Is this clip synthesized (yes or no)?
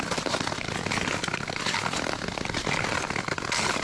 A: no